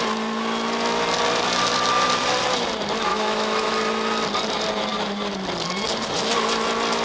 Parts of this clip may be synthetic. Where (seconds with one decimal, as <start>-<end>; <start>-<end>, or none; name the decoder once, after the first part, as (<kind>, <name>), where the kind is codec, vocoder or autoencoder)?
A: 3.1-3.7 (autoencoder, DAC-VAE)

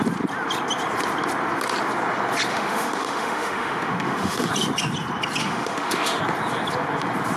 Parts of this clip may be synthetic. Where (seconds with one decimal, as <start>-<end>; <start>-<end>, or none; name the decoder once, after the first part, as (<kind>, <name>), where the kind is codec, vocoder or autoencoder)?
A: 2.5-4.5 (autoencoder, DAC-VAE); 5.4-6.2

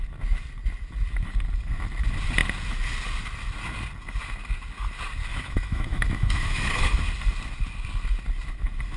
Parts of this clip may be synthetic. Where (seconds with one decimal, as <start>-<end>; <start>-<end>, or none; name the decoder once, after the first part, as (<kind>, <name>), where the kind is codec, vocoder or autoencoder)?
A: 5.3-6.9 (autoencoder, DAC-VAE)

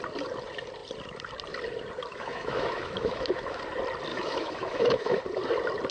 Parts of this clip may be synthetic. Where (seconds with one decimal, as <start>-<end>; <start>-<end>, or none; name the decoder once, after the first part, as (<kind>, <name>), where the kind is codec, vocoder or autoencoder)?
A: 2.1-3.6 (autoencoder, DAC-VAE); 4.1-5.2

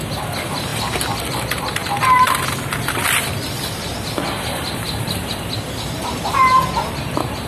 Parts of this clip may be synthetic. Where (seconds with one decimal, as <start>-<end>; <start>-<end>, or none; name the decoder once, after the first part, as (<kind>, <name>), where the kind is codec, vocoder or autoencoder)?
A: none